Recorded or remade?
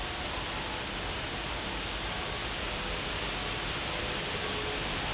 recorded